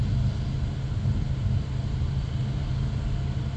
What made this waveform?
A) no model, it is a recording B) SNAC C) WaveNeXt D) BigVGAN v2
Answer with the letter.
A